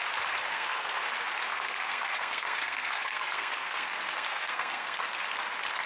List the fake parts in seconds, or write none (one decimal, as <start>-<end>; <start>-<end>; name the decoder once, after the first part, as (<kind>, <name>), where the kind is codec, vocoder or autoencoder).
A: 0.5-1.1 (codec, SNAC); 1.5-5.0